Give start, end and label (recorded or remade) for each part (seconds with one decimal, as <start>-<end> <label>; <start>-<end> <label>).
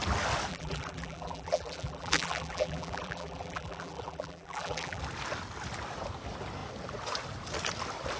0.0-0.5 recorded; 0.5-5.0 remade; 5.0-8.2 recorded